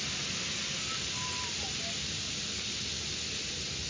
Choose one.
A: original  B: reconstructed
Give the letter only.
A